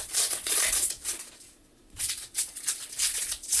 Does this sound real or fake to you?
fake